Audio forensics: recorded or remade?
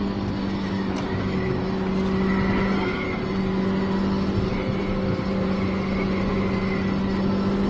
recorded